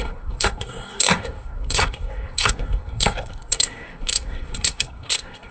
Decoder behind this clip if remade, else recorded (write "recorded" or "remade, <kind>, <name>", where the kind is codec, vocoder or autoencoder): remade, codec, SNAC